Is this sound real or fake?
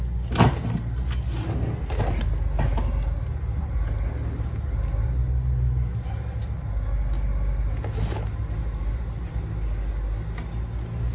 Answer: real